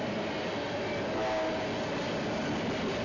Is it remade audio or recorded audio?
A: recorded